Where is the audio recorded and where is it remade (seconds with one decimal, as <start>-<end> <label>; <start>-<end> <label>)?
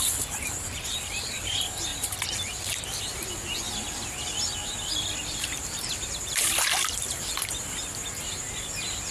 0.0-9.1 remade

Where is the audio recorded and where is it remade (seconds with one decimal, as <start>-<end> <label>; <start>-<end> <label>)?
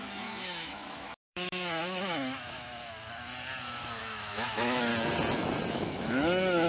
0.0-2.7 remade; 2.7-4.0 recorded; 4.0-4.9 remade; 4.9-5.7 recorded; 5.7-6.7 remade